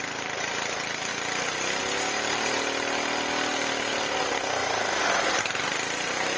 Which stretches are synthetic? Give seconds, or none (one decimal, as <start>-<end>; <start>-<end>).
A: none